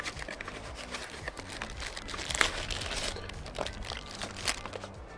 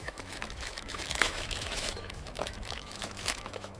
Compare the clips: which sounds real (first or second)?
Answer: first